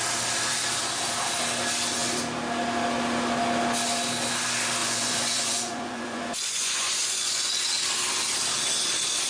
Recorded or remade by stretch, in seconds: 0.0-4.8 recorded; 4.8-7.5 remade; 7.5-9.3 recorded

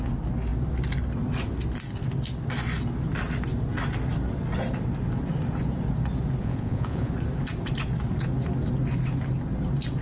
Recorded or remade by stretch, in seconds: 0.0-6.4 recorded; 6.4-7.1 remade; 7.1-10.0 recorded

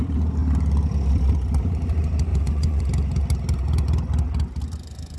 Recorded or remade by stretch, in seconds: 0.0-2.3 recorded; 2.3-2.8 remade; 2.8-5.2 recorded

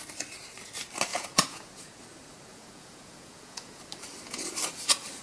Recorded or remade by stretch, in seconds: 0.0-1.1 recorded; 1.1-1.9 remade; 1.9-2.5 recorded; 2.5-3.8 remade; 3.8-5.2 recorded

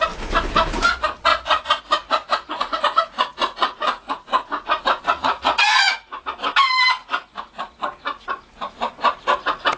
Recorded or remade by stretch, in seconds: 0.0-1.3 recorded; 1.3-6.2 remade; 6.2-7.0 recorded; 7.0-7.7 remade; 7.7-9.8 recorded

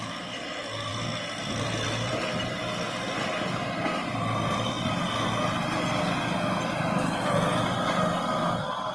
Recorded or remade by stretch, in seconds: 0.0-8.9 recorded

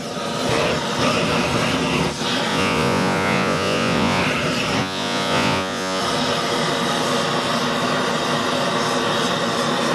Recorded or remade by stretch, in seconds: 0.0-2.5 recorded; 2.5-4.2 remade; 4.2-4.8 recorded; 4.8-6.0 remade; 6.0-9.9 recorded

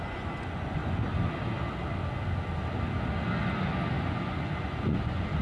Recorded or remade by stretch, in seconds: 0.0-0.8 remade; 0.8-4.0 recorded; 4.0-5.4 remade